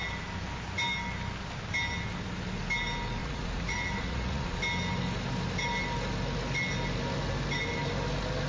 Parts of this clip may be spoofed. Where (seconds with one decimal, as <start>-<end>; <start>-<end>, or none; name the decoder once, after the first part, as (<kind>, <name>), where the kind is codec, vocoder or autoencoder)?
3.2-4.6 (vocoder, Vocos)